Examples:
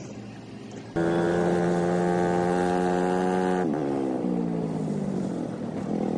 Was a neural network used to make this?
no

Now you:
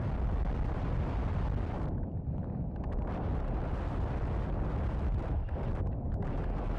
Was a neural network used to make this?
no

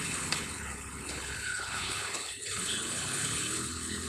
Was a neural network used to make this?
yes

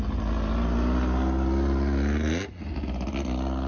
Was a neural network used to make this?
no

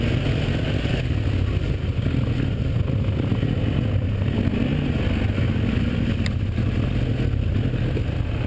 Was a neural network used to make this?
no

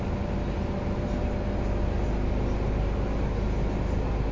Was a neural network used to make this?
no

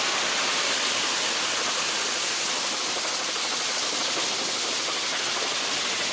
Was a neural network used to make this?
no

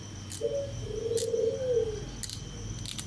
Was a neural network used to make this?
no